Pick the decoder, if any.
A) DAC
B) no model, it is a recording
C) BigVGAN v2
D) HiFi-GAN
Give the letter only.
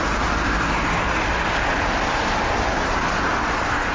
B